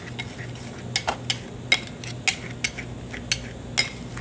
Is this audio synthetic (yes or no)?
no